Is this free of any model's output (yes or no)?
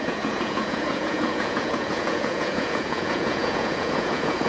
no